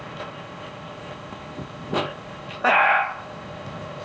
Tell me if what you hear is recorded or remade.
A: remade